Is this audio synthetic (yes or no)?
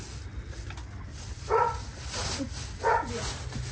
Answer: no